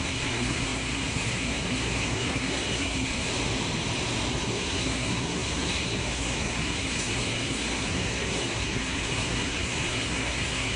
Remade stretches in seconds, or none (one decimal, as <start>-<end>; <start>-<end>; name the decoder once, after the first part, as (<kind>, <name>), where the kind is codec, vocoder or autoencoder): 0.0-3.3 (codec, SNAC); 4.3-10.8